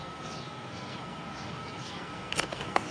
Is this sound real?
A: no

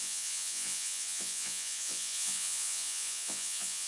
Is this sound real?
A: no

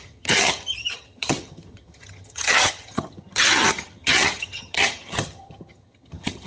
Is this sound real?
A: no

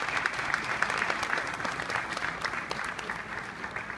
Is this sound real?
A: yes